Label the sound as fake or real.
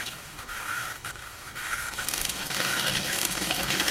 fake